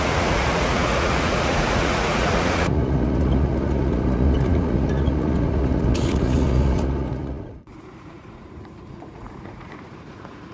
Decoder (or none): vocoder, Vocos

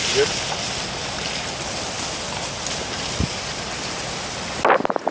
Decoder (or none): none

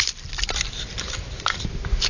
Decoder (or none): none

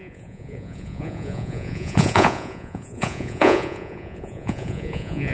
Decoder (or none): vocoder, Vocos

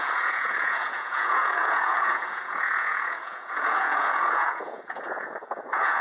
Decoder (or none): vocoder, Vocos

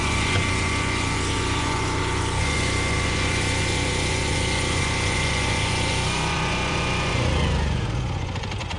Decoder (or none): vocoder, Vocos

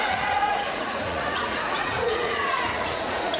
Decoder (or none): vocoder, Vocos